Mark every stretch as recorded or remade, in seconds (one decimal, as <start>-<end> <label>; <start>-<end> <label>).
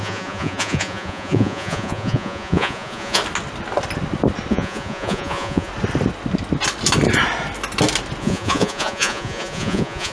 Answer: 0.0-3.2 remade; 3.2-4.5 recorded; 4.5-5.7 remade; 5.7-8.2 recorded; 8.2-10.1 remade